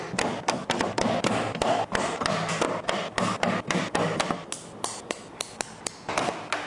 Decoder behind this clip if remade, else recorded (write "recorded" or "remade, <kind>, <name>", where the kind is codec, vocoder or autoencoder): recorded